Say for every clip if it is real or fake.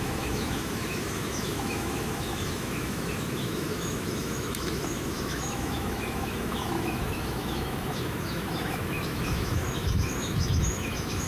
fake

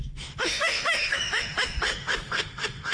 fake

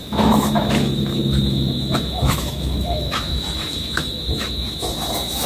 fake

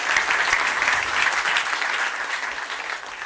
real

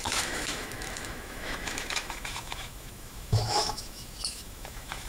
fake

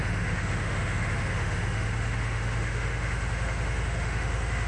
fake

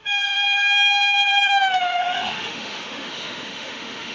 fake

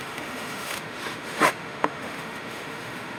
fake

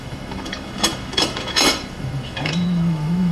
fake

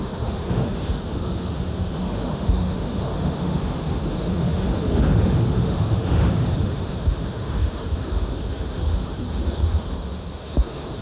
fake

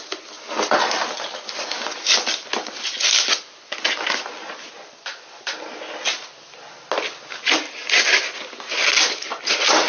real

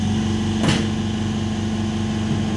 real